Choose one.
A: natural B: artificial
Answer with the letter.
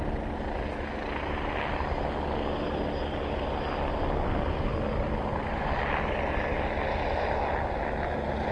A